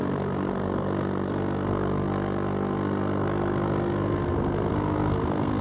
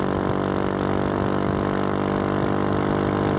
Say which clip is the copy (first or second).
first